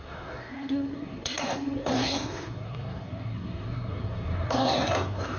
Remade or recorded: remade